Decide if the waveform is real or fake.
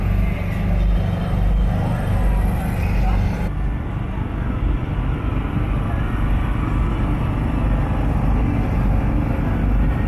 real